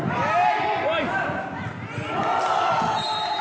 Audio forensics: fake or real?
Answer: real